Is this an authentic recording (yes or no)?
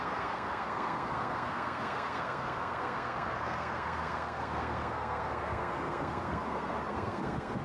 no